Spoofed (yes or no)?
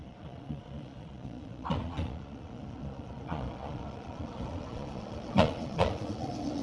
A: yes